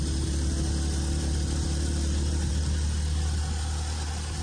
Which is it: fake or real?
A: real